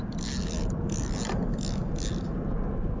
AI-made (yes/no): no